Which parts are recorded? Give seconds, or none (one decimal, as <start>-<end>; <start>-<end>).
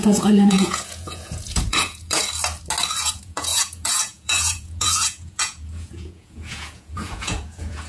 2.2-3.0